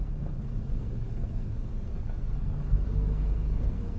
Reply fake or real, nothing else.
fake